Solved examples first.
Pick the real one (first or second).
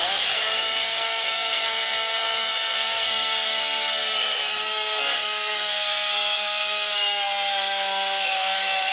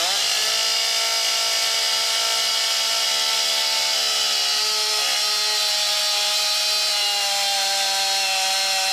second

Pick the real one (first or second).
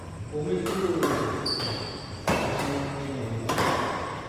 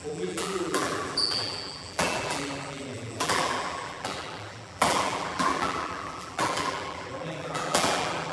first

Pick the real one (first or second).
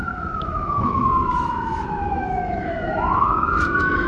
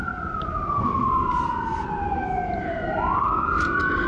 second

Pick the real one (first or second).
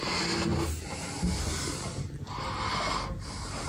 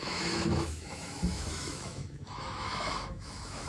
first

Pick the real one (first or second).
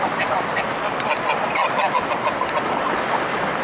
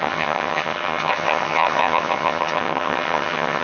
first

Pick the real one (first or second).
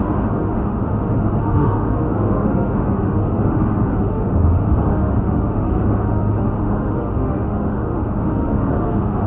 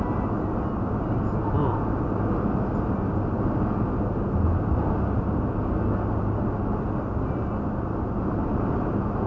second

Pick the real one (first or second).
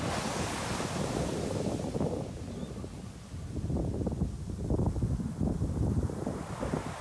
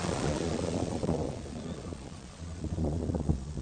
first